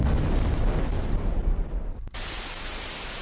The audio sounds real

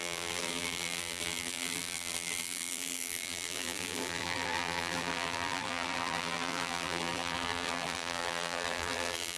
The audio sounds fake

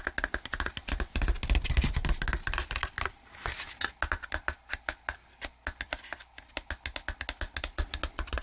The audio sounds real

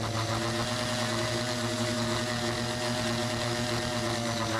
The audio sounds real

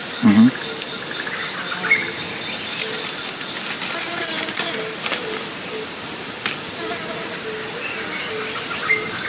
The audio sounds real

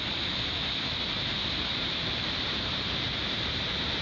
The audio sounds fake